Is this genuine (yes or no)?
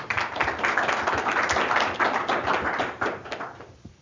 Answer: yes